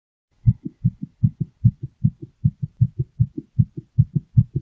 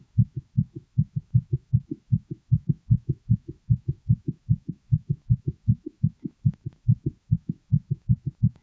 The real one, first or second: first